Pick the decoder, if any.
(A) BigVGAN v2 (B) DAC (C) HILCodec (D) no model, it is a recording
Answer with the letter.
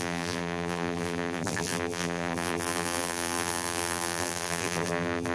A